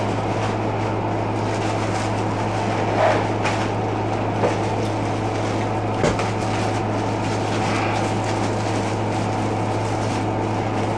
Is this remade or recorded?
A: recorded